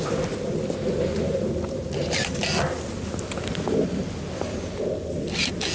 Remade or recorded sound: recorded